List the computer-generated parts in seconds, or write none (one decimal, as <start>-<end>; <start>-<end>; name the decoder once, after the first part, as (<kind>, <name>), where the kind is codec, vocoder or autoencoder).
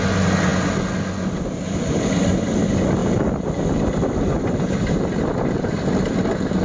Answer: none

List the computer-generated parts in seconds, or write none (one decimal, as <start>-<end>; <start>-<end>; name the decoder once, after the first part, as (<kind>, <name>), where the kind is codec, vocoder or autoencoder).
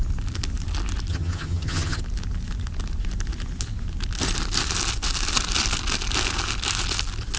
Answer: 1.1-2.0 (vocoder, HiFi-GAN)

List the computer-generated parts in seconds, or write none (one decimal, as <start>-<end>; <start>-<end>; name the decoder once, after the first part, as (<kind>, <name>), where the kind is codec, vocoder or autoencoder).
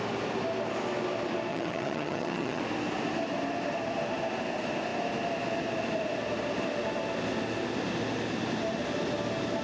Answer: 1.5-2.6 (vocoder, HiFi-GAN)